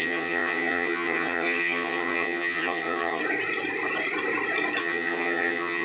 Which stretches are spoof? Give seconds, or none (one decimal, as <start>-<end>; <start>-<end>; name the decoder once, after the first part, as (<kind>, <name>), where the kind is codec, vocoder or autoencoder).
0.0-3.2 (vocoder, HiFi-GAN); 4.8-5.8